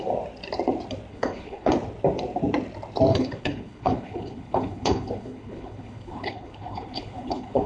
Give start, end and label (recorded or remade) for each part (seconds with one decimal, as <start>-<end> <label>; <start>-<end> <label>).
0.0-1.1 recorded; 1.1-1.7 remade; 1.7-3.1 recorded; 3.1-7.7 remade